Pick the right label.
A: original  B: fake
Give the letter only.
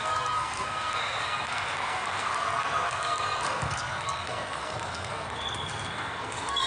B